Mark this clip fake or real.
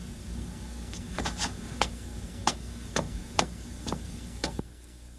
fake